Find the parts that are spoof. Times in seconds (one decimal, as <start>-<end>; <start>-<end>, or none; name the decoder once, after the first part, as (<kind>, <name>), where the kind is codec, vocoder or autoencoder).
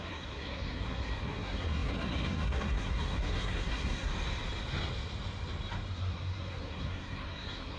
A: 0.0-4.1 (codec, SNAC); 5.9-7.8